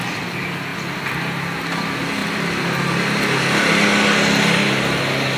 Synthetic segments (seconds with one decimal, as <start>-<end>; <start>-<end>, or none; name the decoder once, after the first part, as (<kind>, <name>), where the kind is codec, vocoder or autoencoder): none